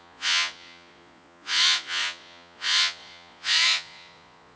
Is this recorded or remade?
remade